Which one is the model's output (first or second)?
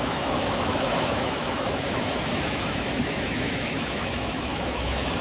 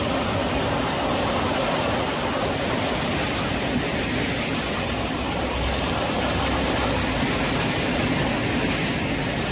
first